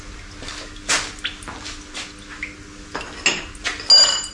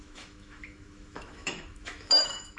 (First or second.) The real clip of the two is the first